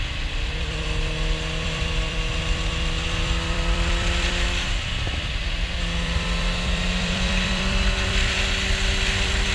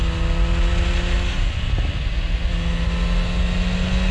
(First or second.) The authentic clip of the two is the second